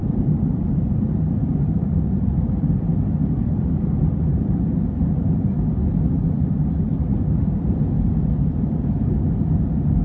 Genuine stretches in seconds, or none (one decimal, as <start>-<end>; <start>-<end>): 2.8-3.2; 5.7-10.0